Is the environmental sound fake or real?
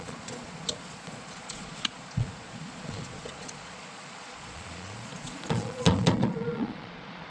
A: fake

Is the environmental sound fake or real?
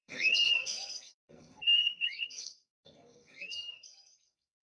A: fake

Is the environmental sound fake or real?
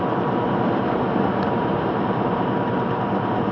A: fake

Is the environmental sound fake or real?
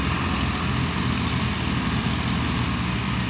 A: real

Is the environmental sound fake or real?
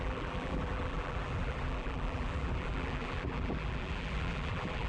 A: fake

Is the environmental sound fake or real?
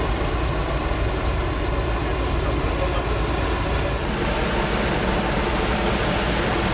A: real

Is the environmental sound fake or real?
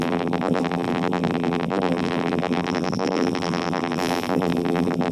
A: fake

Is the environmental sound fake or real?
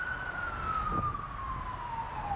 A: real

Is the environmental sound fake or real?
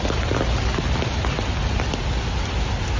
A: real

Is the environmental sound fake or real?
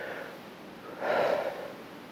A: real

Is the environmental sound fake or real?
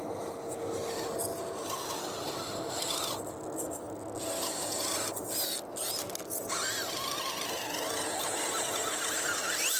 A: real